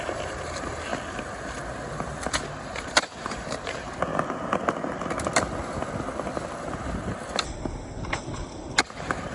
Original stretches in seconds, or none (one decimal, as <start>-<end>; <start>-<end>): 0.9-2.4; 4.1-8.9